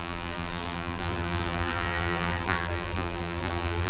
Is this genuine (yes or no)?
no